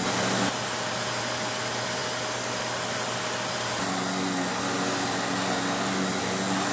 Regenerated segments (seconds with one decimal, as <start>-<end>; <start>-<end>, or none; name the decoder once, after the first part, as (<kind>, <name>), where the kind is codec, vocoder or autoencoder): none